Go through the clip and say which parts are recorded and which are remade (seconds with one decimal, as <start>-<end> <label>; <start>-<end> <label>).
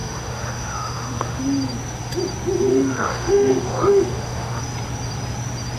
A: 0.0-1.4 remade; 1.4-2.7 recorded; 2.7-4.6 remade; 4.6-5.8 recorded